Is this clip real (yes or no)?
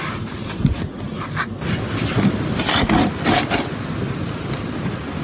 yes